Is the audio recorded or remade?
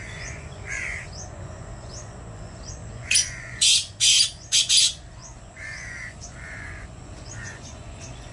remade